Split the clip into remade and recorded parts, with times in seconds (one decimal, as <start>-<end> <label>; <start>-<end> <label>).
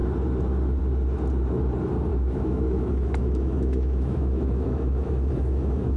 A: 0.0-2.1 recorded; 2.1-6.0 remade